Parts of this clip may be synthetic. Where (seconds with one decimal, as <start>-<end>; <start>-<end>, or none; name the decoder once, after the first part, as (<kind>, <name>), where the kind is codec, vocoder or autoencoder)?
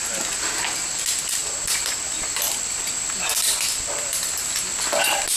none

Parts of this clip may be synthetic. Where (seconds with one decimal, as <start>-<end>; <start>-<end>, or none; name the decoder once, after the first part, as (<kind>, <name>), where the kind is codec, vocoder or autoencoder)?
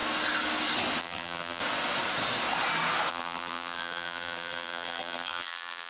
1.0-1.6 (vocoder, BigVGAN v2); 3.1-5.9